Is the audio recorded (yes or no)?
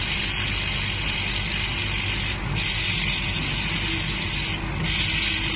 yes